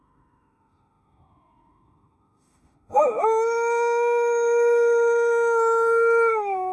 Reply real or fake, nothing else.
fake